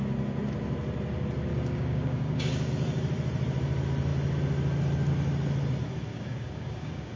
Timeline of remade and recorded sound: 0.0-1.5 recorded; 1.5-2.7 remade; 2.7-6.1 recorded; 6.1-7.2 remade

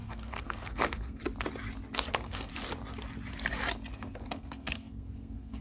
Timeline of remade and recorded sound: 0.0-1.2 remade; 1.2-2.1 recorded; 2.1-2.5 remade; 2.5-3.9 recorded; 3.9-5.6 remade

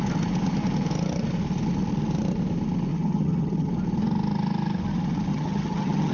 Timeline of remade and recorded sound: 0.0-2.9 recorded; 2.9-3.7 remade; 3.7-5.3 recorded; 5.3-6.1 remade